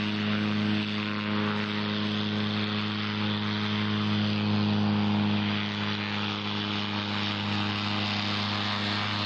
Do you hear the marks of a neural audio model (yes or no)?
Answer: no